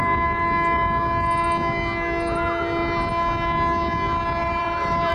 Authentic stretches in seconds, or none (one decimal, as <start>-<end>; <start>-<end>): 0.0-4.4